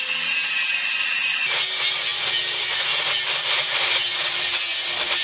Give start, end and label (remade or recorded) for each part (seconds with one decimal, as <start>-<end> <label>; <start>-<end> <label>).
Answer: 0.0-5.2 recorded